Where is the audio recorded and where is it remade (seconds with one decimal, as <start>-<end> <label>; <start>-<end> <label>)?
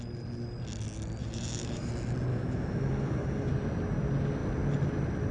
0.0-1.2 recorded; 1.2-1.9 remade; 1.9-2.3 recorded; 2.3-3.5 remade; 3.5-5.3 recorded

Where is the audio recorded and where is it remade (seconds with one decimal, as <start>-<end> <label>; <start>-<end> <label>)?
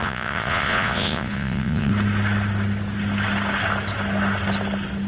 0.0-1.9 remade; 1.9-5.1 recorded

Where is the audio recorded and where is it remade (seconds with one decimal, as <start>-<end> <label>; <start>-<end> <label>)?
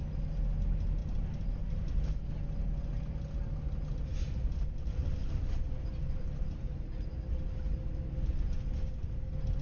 0.0-1.0 recorded; 1.0-1.9 remade; 1.9-6.0 recorded; 6.0-7.1 remade; 7.1-9.6 recorded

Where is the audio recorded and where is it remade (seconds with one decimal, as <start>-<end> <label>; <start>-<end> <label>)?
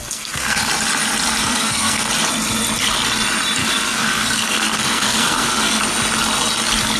0.0-0.7 remade; 0.7-1.4 recorded; 1.4-2.1 remade; 2.1-3.6 recorded; 3.6-5.8 remade; 5.8-7.0 recorded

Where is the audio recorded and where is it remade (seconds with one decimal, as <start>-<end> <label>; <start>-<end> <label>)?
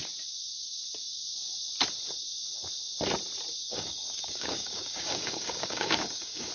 0.0-3.6 recorded; 3.6-6.5 remade